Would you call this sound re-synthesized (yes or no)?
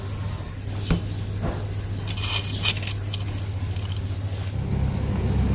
no